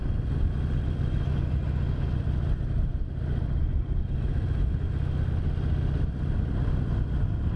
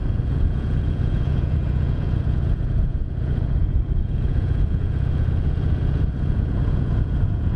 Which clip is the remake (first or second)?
second